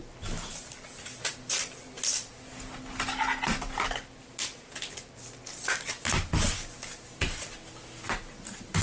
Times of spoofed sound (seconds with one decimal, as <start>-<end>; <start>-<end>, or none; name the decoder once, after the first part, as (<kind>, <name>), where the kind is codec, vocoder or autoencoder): none